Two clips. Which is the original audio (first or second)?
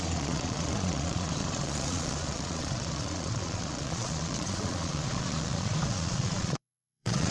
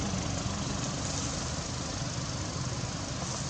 second